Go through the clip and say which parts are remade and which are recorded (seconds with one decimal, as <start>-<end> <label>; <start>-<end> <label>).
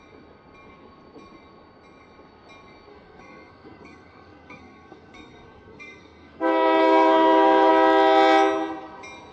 0.0-2.9 recorded; 2.9-7.7 remade; 7.7-9.3 recorded